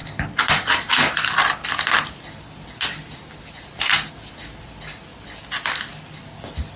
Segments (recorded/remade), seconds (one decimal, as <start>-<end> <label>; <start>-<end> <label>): 0.0-6.8 recorded